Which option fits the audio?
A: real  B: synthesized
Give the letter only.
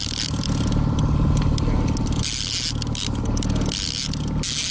A